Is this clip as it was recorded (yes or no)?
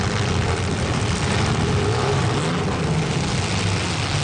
yes